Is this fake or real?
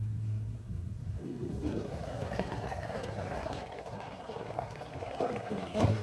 fake